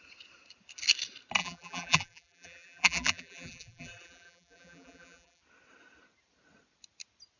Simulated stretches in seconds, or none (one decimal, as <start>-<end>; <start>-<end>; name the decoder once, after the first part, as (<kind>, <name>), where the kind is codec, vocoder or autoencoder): 1.4-5.4 (vocoder, BigVGAN v2)